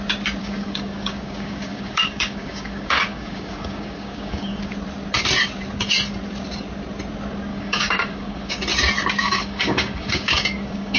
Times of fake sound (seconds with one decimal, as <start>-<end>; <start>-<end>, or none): 0.4-4.7; 7.5-8.6; 9.2-11.0